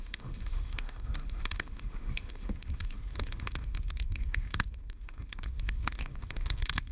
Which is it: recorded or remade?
remade